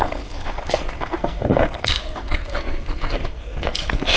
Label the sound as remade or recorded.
remade